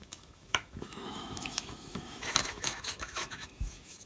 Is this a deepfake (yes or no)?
yes